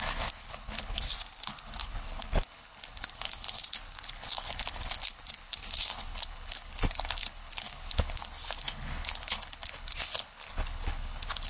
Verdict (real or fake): fake